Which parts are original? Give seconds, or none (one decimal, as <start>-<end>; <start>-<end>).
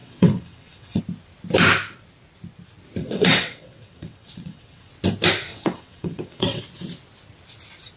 1.0-3.0; 4.9-5.5; 6.6-8.0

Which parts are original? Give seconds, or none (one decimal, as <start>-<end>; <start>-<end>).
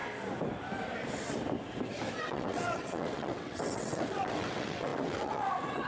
0.0-2.2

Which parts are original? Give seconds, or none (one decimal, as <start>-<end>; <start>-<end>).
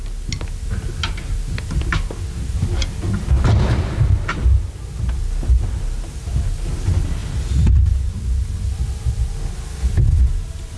0.0-10.8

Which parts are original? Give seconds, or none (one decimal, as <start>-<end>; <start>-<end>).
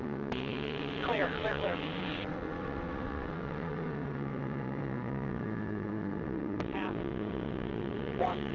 none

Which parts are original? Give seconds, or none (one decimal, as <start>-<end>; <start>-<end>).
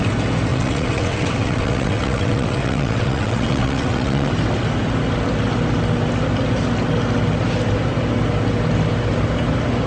0.0-0.5; 4.3-9.9